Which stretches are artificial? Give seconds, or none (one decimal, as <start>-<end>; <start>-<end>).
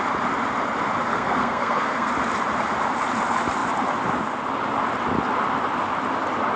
1.1-2.1